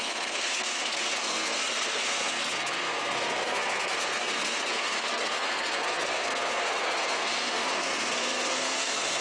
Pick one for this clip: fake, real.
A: fake